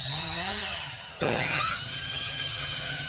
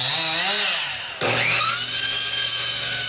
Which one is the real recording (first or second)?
second